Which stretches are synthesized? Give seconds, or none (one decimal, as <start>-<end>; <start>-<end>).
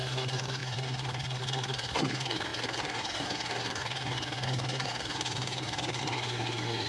0.0-6.9